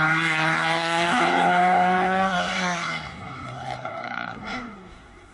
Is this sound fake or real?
fake